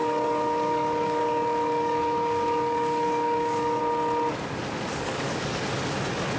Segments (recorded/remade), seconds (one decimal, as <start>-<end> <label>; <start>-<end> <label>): 0.0-3.8 remade; 3.8-4.9 recorded; 4.9-5.6 remade; 5.6-6.4 recorded